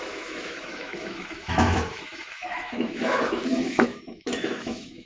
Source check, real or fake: fake